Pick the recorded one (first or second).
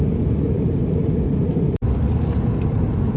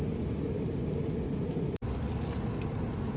second